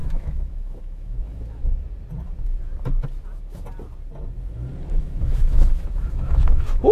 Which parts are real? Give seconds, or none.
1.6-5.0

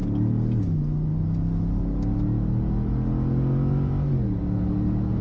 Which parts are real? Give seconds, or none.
0.0-5.2